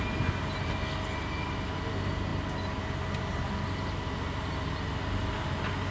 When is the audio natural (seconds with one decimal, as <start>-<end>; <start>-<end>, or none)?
0.0-5.9